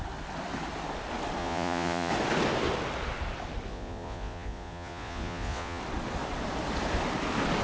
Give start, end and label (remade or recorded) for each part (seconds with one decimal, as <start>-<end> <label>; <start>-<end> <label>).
0.0-1.4 recorded; 1.4-2.1 remade; 2.1-3.7 recorded; 3.7-5.8 remade; 5.8-7.6 recorded